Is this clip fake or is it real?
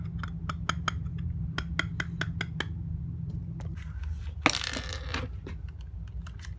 real